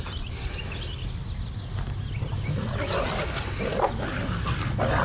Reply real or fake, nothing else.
real